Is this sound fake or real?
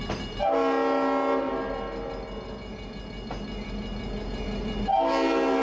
real